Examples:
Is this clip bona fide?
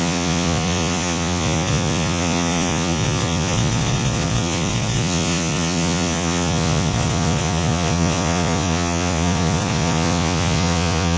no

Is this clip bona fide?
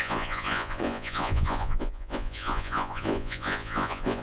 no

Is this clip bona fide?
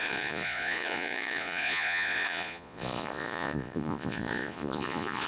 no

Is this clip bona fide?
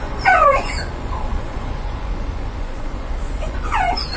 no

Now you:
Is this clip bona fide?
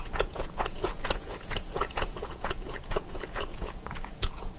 no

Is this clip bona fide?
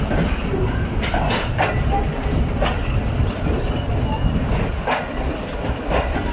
yes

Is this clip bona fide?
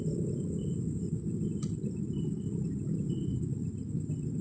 yes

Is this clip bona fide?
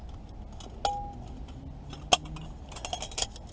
yes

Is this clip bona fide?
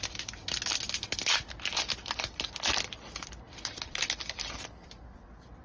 yes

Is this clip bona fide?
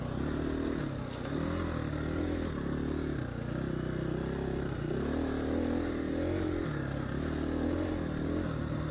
yes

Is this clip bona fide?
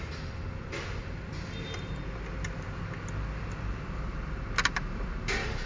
yes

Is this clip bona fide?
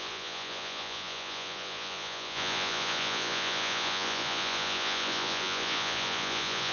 no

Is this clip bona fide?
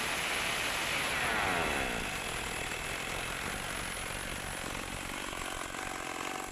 yes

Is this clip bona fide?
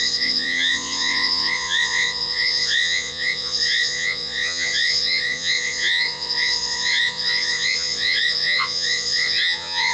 no